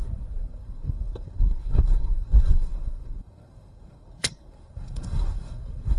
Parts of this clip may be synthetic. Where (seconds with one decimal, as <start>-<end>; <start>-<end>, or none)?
0.0-6.0